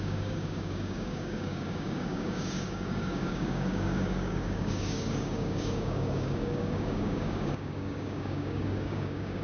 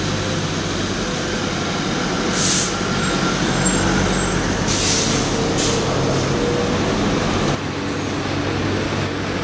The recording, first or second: second